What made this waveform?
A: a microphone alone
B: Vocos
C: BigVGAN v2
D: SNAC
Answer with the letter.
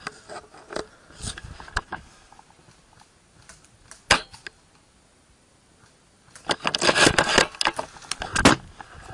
A